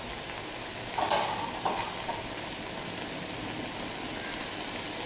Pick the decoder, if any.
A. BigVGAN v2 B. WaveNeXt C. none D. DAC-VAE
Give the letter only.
C